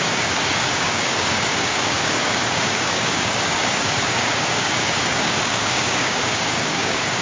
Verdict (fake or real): fake